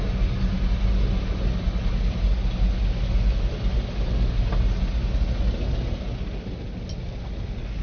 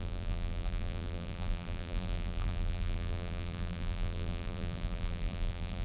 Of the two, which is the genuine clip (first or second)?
first